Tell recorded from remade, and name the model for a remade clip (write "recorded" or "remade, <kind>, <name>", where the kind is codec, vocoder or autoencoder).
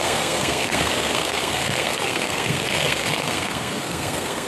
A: remade, codec, SNAC